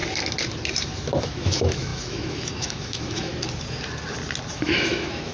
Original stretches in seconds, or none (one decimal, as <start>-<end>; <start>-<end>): 0.0-1.2; 3.3-4.5